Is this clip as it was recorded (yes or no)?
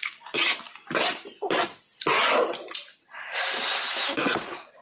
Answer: yes